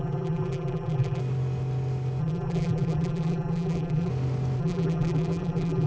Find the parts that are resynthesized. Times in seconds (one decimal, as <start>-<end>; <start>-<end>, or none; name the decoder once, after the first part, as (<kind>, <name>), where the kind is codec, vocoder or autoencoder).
0.0-1.2 (vocoder, BigVGAN v2); 2.2-4.1; 4.6-5.9